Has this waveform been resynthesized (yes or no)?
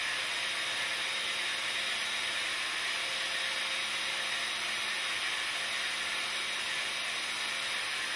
no